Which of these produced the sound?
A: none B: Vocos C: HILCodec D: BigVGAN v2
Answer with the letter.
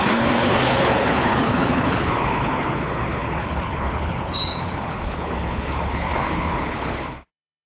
C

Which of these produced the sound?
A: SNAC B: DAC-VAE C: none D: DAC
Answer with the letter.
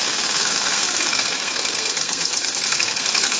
A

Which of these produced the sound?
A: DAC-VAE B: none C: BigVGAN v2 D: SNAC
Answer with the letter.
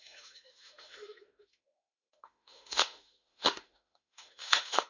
A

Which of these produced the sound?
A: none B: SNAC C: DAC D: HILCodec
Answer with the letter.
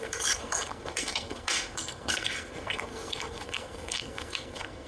B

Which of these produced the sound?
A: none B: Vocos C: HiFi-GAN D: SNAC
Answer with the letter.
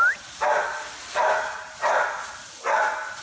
A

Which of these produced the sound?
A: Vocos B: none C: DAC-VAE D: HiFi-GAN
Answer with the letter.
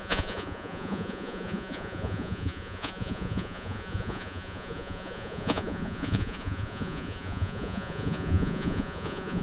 A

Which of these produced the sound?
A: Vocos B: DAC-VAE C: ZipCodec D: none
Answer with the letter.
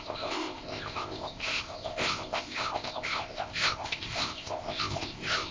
C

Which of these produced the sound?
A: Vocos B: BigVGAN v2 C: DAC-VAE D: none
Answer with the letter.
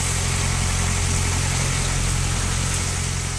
D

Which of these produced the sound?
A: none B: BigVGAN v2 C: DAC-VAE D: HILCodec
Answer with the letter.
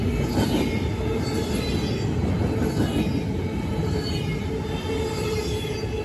A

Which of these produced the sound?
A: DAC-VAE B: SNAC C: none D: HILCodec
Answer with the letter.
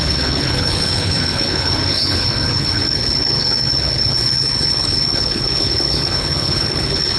D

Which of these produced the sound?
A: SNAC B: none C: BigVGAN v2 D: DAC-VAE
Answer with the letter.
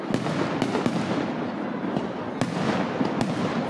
B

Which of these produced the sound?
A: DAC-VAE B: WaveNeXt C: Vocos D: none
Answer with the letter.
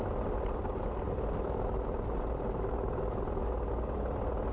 D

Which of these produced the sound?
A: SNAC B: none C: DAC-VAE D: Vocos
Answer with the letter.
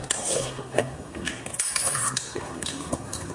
A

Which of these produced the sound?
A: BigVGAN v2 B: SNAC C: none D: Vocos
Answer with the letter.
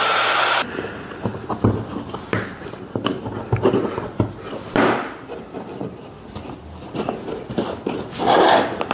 C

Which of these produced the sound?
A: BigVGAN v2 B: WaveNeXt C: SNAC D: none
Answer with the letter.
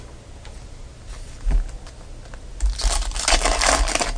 D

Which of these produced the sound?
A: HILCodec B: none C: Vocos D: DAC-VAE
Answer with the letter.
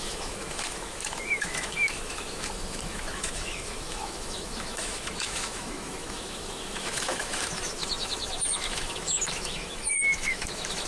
D